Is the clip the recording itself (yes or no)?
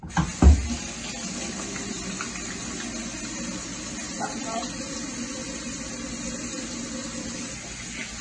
yes